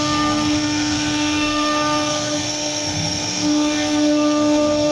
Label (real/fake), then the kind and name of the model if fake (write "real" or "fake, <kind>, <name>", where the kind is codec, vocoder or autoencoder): fake, codec, SNAC